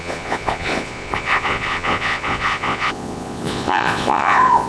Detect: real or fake fake